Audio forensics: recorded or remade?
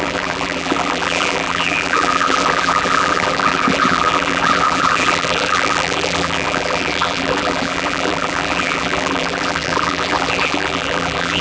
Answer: remade